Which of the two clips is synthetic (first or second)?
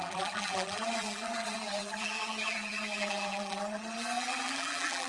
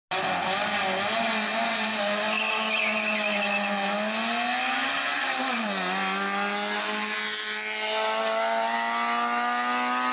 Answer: first